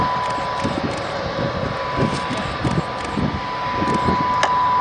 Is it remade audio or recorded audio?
recorded